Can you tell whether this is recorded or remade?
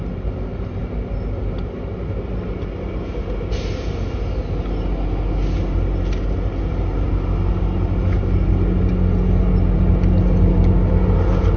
recorded